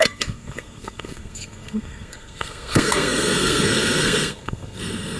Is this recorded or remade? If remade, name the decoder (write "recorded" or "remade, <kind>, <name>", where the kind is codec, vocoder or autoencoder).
remade, codec, SNAC